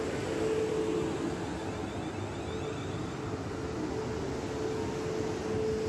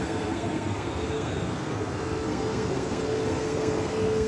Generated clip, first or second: second